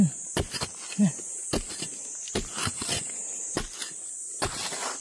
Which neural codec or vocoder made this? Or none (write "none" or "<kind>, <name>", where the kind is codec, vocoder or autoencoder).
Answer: none